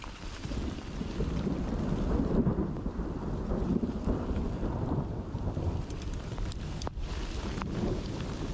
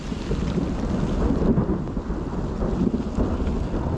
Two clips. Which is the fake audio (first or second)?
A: first